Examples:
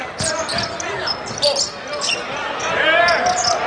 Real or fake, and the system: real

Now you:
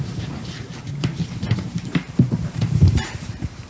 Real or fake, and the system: fake, vocoder, BigVGAN v2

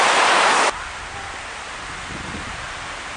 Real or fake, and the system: real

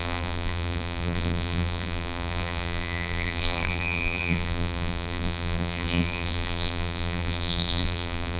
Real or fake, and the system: fake, vocoder, BigVGAN v2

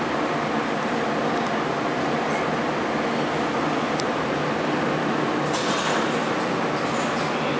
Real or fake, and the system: real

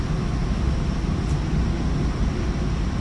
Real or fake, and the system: real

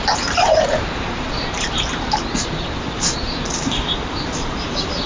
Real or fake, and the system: fake, vocoder, BigVGAN v2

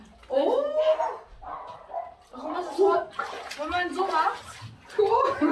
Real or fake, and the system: real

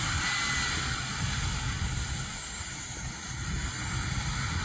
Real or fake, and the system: real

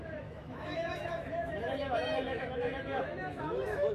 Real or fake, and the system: fake, autoencoder, DAC-VAE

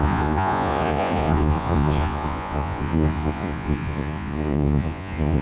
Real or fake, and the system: fake, vocoder, Vocos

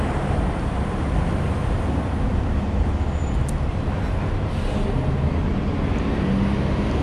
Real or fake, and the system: real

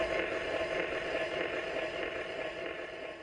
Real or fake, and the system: real